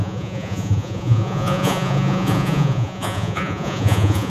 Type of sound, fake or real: fake